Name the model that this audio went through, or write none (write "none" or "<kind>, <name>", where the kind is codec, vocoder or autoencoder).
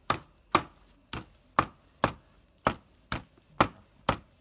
none